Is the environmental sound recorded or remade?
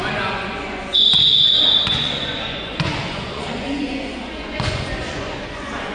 remade